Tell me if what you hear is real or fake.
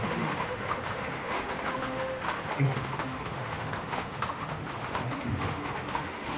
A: fake